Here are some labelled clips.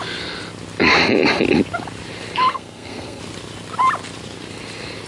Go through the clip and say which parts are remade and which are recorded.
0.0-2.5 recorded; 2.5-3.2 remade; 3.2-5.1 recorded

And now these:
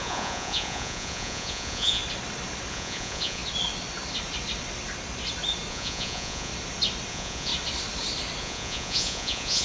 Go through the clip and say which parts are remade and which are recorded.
0.0-2.0 remade; 2.0-2.7 recorded; 2.7-3.4 remade; 3.4-5.7 recorded; 5.7-6.5 remade; 6.5-7.1 recorded; 7.1-7.5 remade; 7.5-8.4 recorded; 8.4-9.6 remade

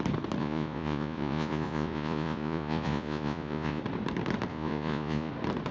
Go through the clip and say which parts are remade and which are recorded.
0.0-0.4 recorded; 0.4-3.8 remade; 3.8-4.5 recorded; 4.5-5.3 remade; 5.3-5.7 recorded

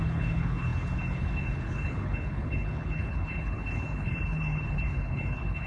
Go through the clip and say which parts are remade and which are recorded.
0.0-5.7 remade

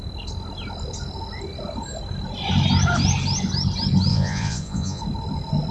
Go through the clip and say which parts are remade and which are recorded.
0.0-4.1 recorded; 4.1-5.0 remade; 5.0-5.7 recorded

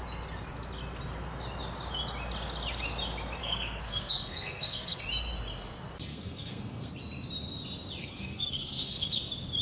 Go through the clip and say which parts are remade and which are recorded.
0.0-3.4 recorded; 3.4-5.0 remade; 5.0-6.1 recorded; 6.1-6.9 remade; 6.9-8.0 recorded; 8.0-9.2 remade; 9.2-9.6 recorded

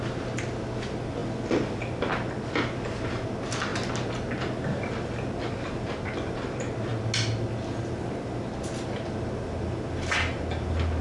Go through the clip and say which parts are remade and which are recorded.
0.0-11.0 recorded

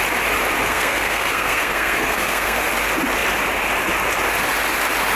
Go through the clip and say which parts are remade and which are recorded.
0.0-0.6 recorded; 0.6-2.6 remade; 2.6-5.2 recorded